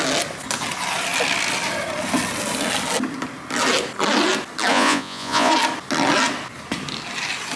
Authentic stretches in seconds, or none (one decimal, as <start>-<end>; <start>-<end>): 0.0-4.7; 5.5-7.6